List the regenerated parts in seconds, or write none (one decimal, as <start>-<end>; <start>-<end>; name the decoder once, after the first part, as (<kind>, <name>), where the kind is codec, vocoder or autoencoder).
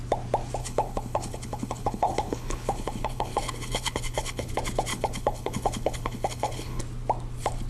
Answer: 0.6-4.5 (codec, HILCodec); 4.9-6.8